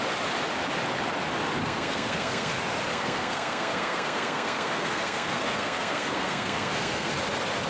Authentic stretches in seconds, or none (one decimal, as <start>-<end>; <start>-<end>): 0.0-1.6; 2.5-2.9; 7.1-7.7